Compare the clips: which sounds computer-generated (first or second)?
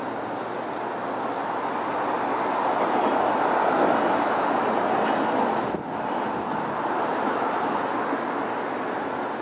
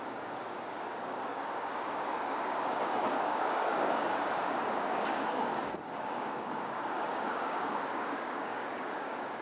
second